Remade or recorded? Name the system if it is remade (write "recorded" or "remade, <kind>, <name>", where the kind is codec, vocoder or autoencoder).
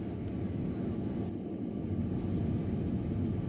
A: recorded